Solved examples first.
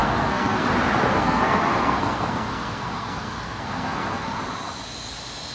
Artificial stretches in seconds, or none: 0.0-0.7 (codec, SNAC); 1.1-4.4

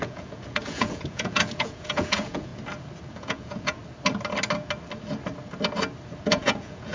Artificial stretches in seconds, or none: 0.0-2.5 (vocoder, Vocos); 3.1-3.8; 6.2-6.9

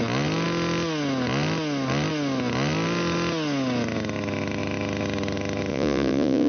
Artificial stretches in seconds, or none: 5.7-6.5 (vocoder, Vocos)